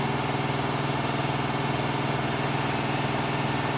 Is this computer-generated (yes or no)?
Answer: no